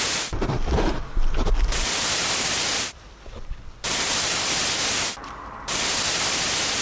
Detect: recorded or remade remade